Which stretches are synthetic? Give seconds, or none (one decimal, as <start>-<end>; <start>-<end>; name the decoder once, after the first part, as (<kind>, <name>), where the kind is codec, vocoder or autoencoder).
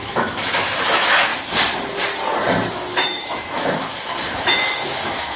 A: 0.0-1.3 (autoencoder, DAC-VAE); 2.7-5.4